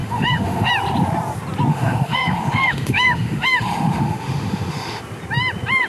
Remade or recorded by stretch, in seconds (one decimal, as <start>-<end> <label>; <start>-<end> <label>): 0.0-0.7 remade; 0.7-1.7 recorded; 1.7-5.0 remade; 5.0-5.9 recorded